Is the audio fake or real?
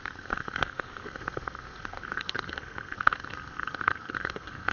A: fake